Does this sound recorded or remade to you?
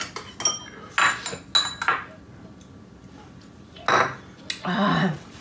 recorded